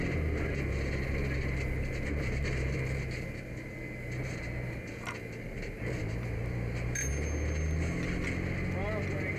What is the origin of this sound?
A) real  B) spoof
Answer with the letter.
A